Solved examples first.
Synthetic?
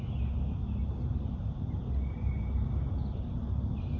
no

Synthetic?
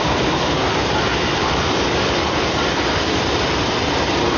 yes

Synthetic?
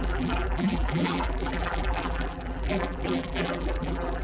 yes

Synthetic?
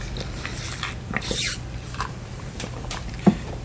yes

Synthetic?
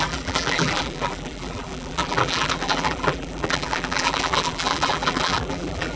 yes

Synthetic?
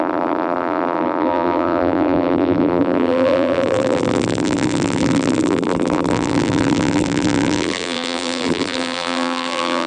yes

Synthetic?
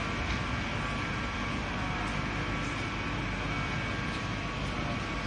no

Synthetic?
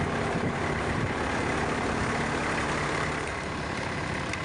yes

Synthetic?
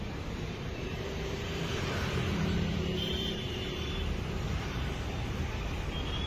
yes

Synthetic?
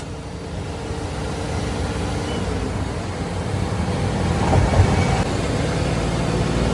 no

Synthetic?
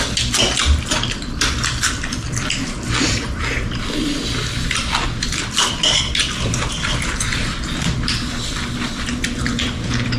yes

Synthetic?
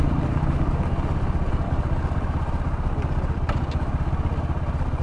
no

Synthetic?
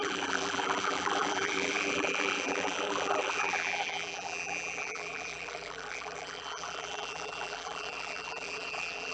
yes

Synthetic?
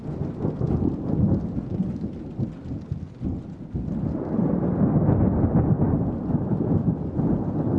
no